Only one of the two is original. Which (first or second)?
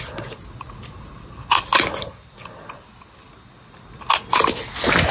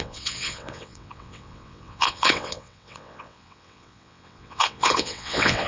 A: first